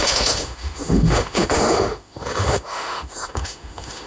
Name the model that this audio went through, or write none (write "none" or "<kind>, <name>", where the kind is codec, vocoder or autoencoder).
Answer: autoencoder, DAC-VAE